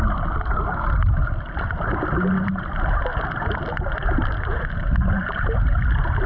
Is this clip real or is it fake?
real